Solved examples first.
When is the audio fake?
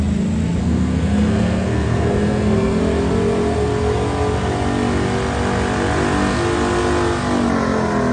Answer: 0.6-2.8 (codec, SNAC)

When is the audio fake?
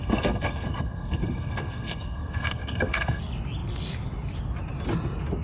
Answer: 0.0-3.2 (codec, SNAC)